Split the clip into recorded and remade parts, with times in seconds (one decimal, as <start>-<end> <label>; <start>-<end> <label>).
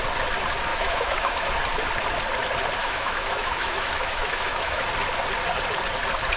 0.0-0.7 recorded; 0.7-1.5 remade; 1.5-2.8 recorded; 2.8-4.8 remade; 4.8-6.4 recorded